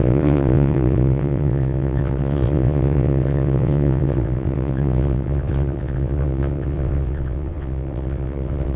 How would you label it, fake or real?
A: fake